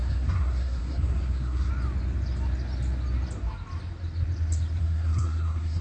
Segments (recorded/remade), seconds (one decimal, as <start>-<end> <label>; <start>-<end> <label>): 0.0-1.7 remade; 1.7-4.8 recorded; 4.8-5.8 remade